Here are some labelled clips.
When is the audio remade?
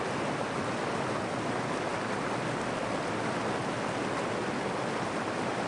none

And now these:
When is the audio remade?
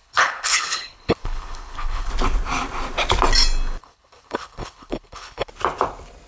0.0-2.1 (codec, HILCodec); 3.8-5.5